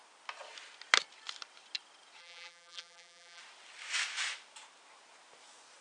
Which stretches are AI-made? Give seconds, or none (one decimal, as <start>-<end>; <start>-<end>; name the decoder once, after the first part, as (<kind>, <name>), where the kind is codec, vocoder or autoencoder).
2.2-3.4 (vocoder, BigVGAN v2)